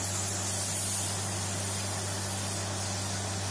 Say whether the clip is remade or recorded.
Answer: recorded